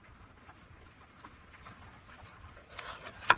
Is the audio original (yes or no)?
no